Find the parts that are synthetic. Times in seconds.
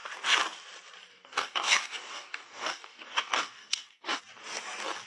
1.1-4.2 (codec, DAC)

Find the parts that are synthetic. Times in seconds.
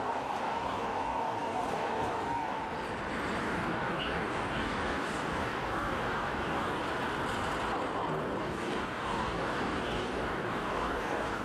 0.0-2.6 (codec, DAC); 3.4-6.8; 8.4-11.4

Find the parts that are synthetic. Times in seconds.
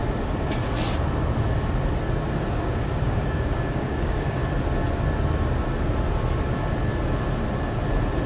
2.5-4.4 (codec, DAC)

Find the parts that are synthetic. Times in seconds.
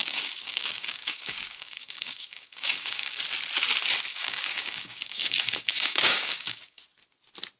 0.0-3.2 (codec, DAC); 4.1-6.8